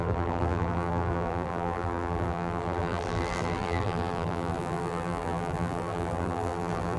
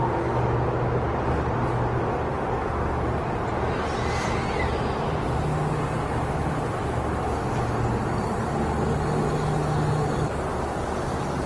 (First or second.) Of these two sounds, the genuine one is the second